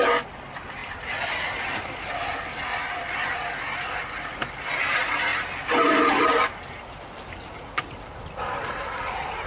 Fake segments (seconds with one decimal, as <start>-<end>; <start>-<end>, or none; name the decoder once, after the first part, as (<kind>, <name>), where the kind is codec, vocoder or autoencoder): 0.8-3.1 (vocoder, BigVGAN v2)